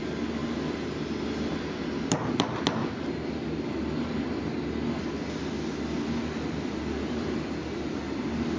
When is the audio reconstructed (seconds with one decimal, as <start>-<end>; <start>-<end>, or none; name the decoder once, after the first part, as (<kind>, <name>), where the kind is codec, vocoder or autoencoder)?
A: none